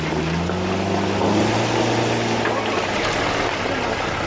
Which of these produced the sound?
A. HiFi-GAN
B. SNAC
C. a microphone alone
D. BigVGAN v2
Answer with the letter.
C